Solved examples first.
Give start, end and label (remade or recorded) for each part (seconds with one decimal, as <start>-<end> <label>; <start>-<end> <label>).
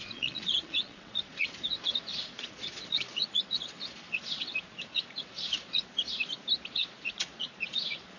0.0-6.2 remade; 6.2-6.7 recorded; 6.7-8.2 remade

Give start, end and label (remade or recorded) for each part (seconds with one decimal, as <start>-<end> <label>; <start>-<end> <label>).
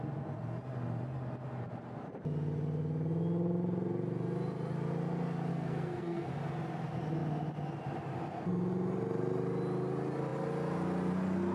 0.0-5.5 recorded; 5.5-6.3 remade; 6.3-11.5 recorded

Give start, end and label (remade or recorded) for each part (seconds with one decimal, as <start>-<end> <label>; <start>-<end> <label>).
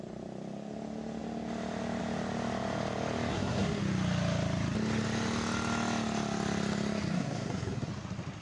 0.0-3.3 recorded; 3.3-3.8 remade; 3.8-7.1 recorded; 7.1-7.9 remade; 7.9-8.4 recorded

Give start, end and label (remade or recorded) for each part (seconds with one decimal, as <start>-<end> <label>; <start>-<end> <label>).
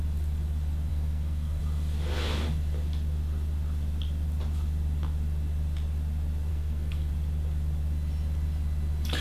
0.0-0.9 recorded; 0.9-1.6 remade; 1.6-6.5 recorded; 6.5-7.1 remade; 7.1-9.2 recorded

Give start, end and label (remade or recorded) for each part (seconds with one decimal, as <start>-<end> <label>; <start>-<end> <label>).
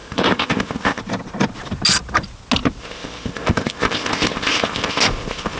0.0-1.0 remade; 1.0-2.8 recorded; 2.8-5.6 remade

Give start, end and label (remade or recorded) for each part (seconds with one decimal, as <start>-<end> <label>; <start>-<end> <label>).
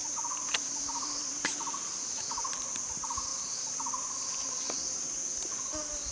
0.0-3.3 remade; 3.3-6.1 recorded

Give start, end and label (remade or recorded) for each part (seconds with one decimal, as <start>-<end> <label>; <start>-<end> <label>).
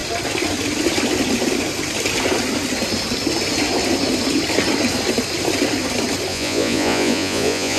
0.0-6.3 recorded; 6.3-7.8 remade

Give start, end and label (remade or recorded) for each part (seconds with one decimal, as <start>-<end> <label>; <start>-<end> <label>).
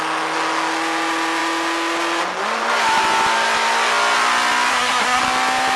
0.0-4.7 recorded; 4.7-5.2 remade; 5.2-5.8 recorded